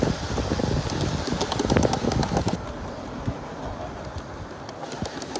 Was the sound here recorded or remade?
recorded